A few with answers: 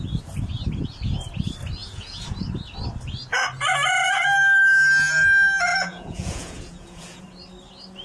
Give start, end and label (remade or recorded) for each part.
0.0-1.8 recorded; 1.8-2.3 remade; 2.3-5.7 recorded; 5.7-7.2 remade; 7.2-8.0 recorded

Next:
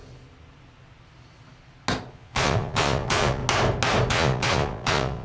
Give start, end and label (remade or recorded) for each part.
0.0-2.1 recorded; 2.1-3.4 remade; 3.4-4.1 recorded; 4.1-5.2 remade

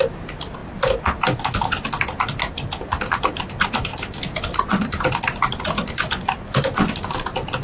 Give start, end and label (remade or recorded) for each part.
0.0-7.6 recorded

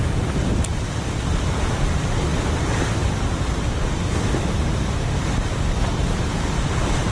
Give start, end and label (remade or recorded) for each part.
0.0-7.1 recorded